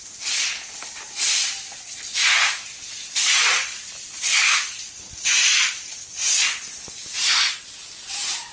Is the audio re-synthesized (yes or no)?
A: no